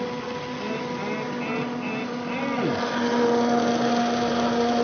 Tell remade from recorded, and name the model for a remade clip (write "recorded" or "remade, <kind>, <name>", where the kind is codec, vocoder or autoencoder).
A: recorded